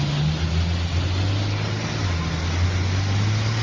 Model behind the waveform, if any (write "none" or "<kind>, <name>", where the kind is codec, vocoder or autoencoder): none